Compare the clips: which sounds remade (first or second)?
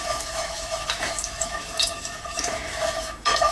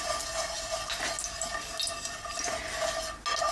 first